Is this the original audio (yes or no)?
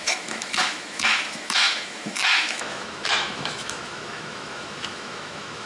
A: no